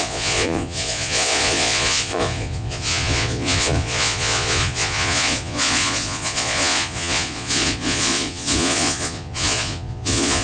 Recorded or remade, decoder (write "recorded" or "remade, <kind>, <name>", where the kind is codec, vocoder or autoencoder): remade, vocoder, Vocos